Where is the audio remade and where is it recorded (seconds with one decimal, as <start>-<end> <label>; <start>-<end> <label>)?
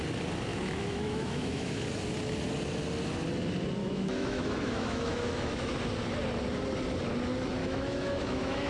0.0-0.5 recorded; 0.5-1.8 remade; 1.8-3.8 recorded; 3.8-5.7 remade; 5.7-7.6 recorded; 7.6-8.7 remade